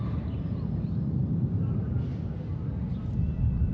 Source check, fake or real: real